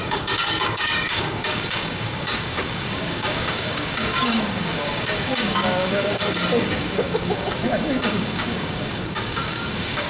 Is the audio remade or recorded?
remade